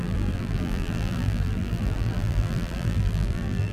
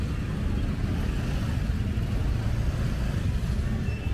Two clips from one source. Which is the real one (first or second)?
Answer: second